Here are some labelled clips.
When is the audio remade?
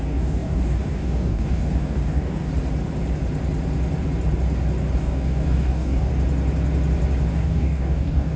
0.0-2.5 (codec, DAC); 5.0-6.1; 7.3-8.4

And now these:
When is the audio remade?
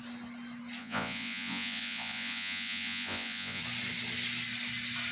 0.8-3.6 (vocoder, Vocos)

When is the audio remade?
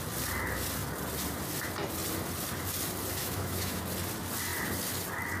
3.2-3.8 (autoencoder, DAC-VAE)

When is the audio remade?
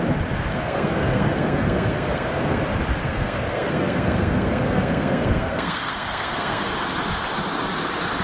0.5-2.6 (codec, SNAC); 3.0-6.7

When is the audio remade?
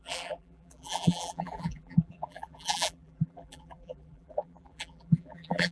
0.0-5.7 (vocoder, BigVGAN v2)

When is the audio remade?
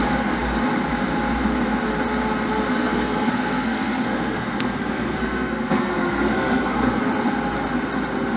2.7-7.0 (codec, SNAC)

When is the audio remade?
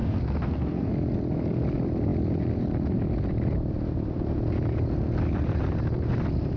0.0-0.9 (codec, SNAC)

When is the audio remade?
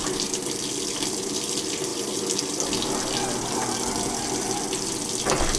none